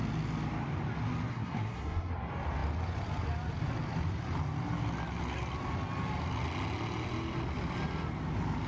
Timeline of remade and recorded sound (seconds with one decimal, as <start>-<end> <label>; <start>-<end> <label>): 0.0-1.3 recorded; 1.3-2.1 remade; 2.1-8.7 recorded